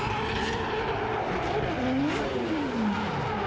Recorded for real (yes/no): yes